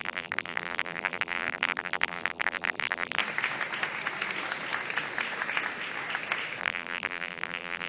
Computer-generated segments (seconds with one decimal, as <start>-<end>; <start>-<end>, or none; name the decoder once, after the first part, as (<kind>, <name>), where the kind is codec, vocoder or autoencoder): 0.0-3.2 (vocoder, BigVGAN v2); 6.6-7.9